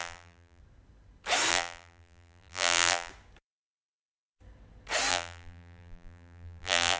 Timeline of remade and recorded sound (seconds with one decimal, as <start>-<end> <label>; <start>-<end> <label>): 0.0-0.6 remade; 0.6-1.5 recorded; 1.5-3.1 remade; 3.1-5.1 recorded; 5.1-7.0 remade